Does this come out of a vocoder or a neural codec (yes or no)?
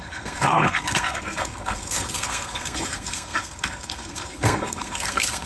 yes